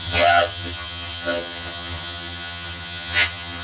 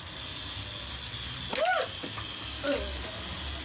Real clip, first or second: second